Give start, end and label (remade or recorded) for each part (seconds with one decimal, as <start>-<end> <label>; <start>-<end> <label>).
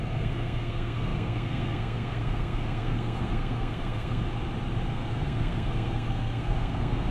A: 0.0-4.2 remade; 4.2-4.9 recorded; 4.9-7.1 remade